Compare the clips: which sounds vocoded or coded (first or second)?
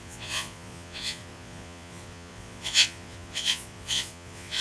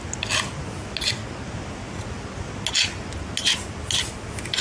first